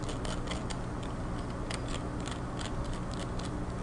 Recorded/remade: recorded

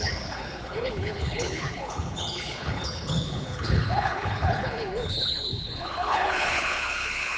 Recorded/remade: remade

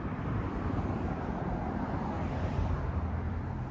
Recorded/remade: recorded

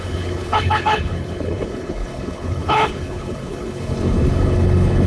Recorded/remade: remade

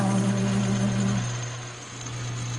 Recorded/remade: recorded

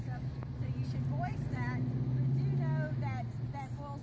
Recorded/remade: recorded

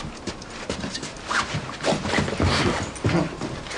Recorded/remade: recorded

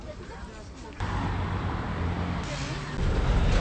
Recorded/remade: recorded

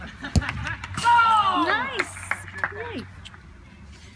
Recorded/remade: recorded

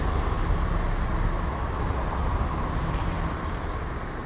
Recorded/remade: recorded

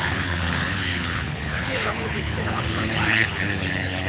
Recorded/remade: remade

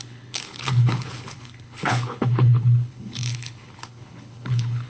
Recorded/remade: remade